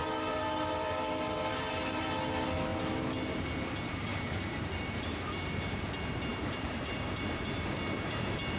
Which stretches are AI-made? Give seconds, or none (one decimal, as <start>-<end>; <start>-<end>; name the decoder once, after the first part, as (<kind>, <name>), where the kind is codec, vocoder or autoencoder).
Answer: 0.0-2.0 (vocoder, BigVGAN v2); 4.1-5.0; 6.3-7.2